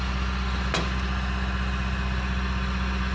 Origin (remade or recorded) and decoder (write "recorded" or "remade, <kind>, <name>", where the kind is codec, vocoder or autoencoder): recorded